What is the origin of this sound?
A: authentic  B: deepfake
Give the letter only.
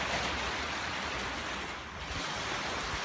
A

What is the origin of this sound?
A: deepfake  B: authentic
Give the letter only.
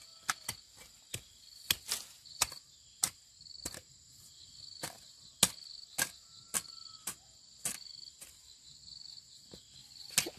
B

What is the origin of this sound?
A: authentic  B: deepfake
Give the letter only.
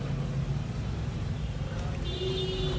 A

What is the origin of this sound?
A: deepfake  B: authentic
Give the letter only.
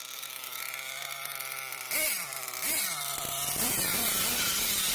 A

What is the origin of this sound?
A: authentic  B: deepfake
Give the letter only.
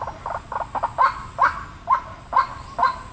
A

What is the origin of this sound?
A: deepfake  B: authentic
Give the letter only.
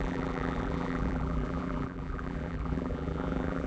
A